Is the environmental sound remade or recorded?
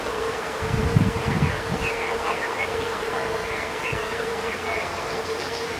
remade